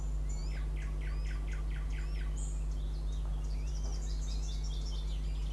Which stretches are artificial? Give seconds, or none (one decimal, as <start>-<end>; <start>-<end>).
none